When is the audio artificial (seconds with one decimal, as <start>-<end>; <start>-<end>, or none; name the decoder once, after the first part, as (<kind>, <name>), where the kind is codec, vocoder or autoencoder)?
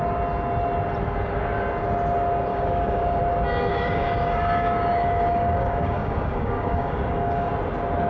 2.5-3.2 (codec, DAC); 3.7-7.5